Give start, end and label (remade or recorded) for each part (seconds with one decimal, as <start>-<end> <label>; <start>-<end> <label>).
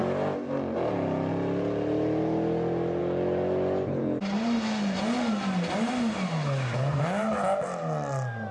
0.0-8.5 recorded